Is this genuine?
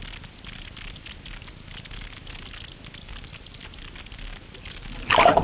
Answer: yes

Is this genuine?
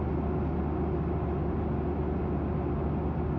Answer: yes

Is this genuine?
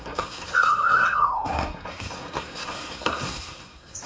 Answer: no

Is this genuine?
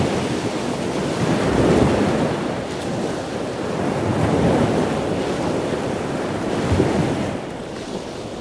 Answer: yes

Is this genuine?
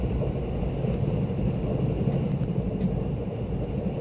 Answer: yes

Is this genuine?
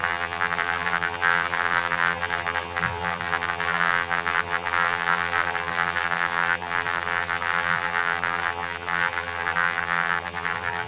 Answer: no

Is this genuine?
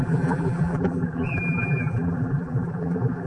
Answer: no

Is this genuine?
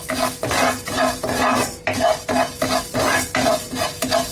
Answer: yes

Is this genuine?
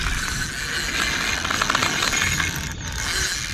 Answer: yes